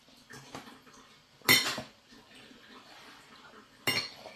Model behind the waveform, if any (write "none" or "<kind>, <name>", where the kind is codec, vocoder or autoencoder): none